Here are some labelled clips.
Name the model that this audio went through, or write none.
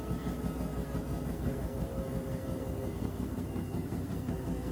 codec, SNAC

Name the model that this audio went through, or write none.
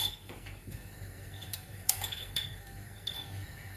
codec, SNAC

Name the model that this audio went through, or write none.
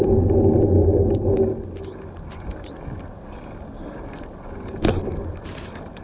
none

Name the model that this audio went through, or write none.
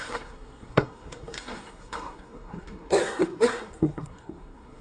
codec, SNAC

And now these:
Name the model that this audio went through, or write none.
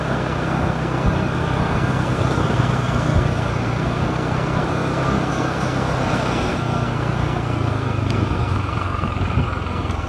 codec, SNAC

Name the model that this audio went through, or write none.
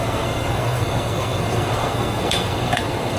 codec, SNAC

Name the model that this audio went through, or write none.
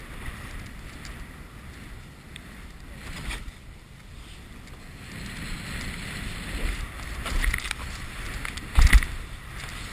none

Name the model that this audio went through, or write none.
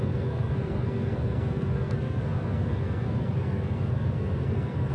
codec, SNAC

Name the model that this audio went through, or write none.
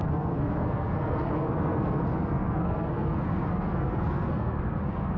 codec, SNAC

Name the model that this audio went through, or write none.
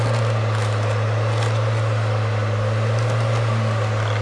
none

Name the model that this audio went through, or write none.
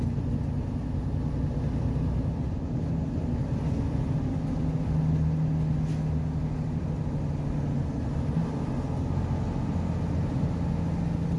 none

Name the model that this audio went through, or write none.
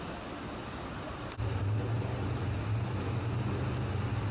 none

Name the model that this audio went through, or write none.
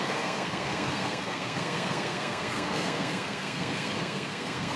codec, SNAC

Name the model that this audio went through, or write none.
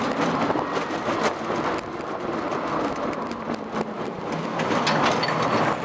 none